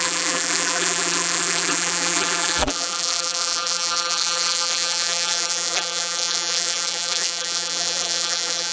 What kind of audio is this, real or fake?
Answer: fake